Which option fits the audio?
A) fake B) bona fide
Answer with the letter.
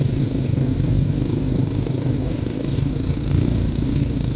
A